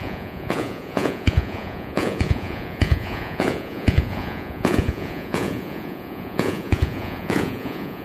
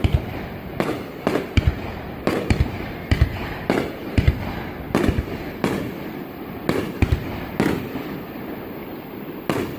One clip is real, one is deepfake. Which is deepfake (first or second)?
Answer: first